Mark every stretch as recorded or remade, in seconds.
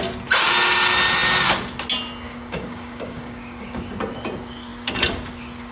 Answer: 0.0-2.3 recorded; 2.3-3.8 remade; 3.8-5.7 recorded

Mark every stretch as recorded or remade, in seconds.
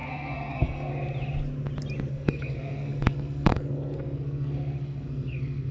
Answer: 0.0-0.9 remade; 0.9-2.1 recorded; 2.1-5.7 remade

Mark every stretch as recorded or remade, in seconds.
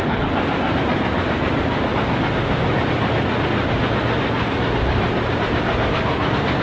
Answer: 0.0-6.6 recorded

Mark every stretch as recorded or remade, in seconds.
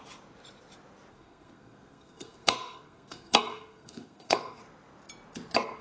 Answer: 0.0-1.1 recorded; 1.1-4.6 remade; 4.6-5.8 recorded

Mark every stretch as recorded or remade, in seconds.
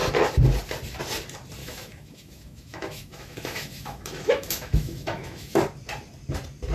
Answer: 0.0-1.6 recorded; 1.6-5.6 remade; 5.6-6.7 recorded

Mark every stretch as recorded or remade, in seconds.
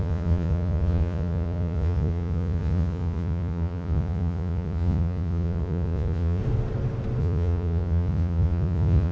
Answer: 0.0-6.4 remade; 6.4-7.2 recorded; 7.2-9.1 remade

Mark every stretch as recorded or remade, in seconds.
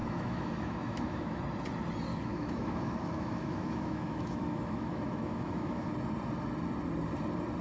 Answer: 0.0-1.4 remade; 1.4-2.1 recorded; 2.1-5.9 remade; 5.9-7.6 recorded